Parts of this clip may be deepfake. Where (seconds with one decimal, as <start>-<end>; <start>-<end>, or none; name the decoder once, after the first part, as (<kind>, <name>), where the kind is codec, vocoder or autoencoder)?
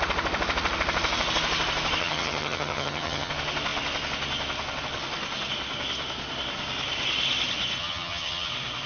2.0-3.3 (vocoder, HiFi-GAN); 7.8-8.5